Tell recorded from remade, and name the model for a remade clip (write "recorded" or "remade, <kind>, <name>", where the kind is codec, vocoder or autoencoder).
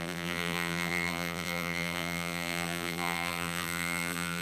remade, vocoder, BigVGAN v2